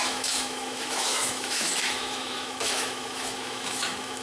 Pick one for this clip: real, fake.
fake